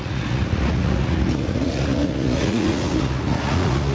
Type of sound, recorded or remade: remade